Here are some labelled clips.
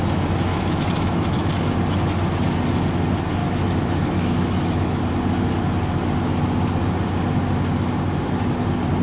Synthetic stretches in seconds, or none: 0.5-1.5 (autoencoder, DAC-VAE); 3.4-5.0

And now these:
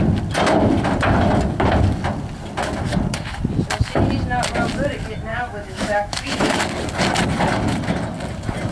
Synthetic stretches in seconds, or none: 5.3-6.6 (autoencoder, DAC-VAE)

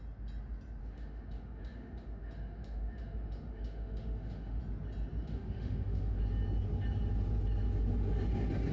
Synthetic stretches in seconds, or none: 0.8-4.6 (autoencoder, DAC-VAE); 5.2-6.2

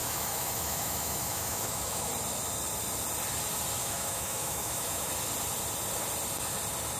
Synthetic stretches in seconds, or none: 0.0-2.1 (autoencoder, DAC-VAE); 3.8-5.1

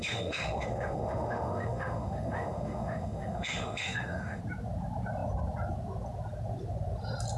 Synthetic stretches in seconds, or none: 0.0-4.4 (autoencoder, DAC-VAE)

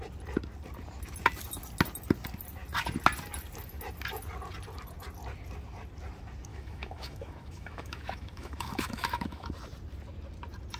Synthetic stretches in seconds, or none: 6.5-9.5 (autoencoder, DAC-VAE)

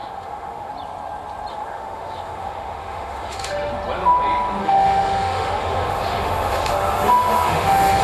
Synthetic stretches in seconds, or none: 0.0-0.7 (autoencoder, DAC-VAE); 1.5-3.7; 4.6-8.0